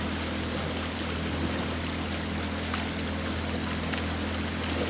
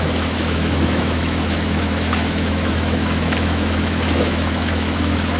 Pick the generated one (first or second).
second